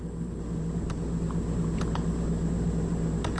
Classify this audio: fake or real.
real